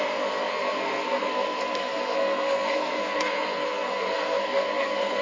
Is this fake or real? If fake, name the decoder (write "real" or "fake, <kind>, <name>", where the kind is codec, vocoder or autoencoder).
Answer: fake, codec, SNAC